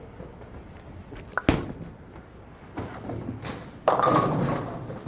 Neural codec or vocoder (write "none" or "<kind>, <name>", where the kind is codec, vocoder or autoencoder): none